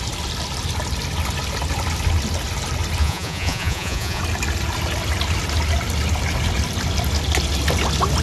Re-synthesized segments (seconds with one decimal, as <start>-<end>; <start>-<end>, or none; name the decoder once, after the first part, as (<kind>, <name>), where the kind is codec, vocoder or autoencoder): 3.0-4.2 (vocoder, Vocos)